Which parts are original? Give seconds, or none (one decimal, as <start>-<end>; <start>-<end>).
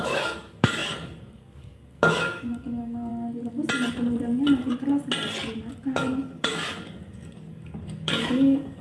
3.1-5.7